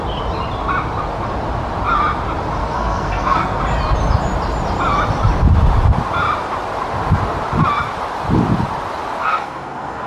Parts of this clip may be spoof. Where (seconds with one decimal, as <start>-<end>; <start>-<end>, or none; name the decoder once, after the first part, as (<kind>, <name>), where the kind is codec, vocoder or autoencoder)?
2.6-3.6 (codec, SNAC); 9.2-10.1